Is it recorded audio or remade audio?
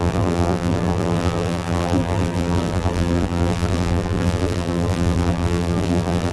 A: remade